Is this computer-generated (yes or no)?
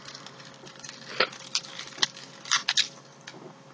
no